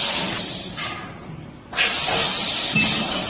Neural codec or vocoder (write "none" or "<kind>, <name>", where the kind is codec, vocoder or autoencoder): none